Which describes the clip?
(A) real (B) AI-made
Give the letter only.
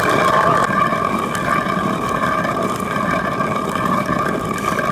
A